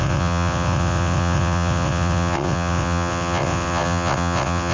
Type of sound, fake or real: fake